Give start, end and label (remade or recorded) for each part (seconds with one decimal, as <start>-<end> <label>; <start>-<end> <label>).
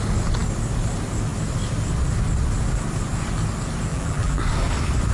0.0-3.9 recorded; 3.9-4.4 remade; 4.4-5.1 recorded